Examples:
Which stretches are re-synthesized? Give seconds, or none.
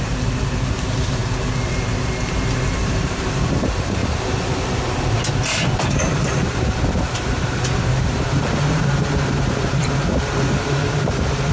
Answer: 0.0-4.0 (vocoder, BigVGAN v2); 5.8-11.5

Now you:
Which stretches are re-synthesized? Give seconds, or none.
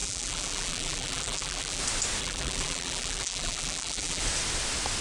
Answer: 0.0-1.8 (vocoder, BigVGAN v2); 2.2-4.2